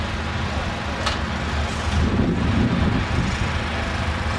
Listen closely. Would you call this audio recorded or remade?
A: recorded